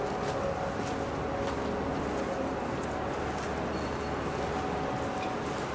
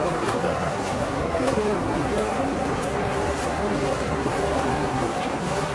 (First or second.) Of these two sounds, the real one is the first